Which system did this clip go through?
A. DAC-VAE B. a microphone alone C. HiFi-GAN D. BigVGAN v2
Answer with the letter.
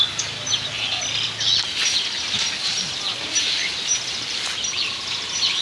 B